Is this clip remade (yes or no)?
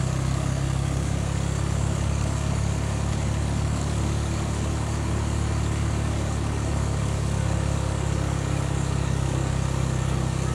yes